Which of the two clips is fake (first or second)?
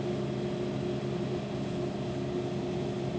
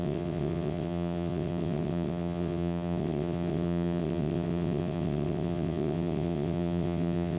second